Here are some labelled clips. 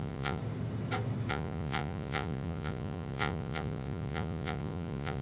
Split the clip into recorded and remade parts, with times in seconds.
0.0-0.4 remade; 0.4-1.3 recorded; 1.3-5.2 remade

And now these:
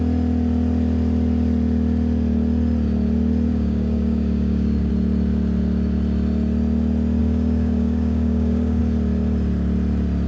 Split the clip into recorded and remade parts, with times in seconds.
0.0-3.5 recorded; 3.5-4.9 remade; 4.9-7.2 recorded; 7.2-8.8 remade; 8.8-10.3 recorded